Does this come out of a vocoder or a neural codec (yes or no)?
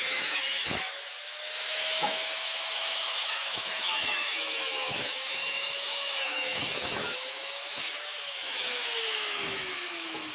yes